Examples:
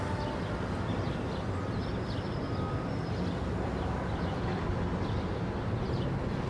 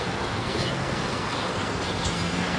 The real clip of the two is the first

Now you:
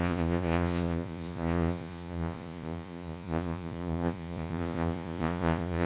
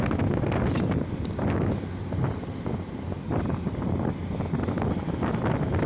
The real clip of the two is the second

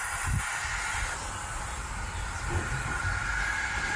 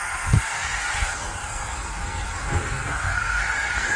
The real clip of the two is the first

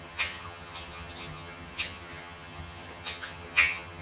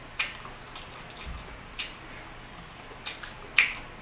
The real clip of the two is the second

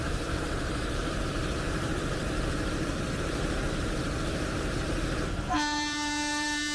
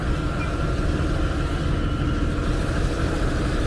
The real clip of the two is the second